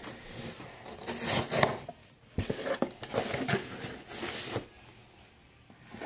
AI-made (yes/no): no